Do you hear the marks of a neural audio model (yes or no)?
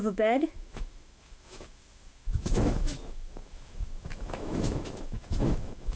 yes